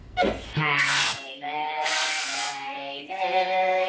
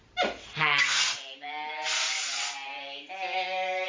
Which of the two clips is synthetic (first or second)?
first